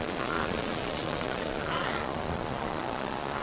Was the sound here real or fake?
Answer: fake